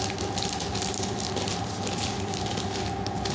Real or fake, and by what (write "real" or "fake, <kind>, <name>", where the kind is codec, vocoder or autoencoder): real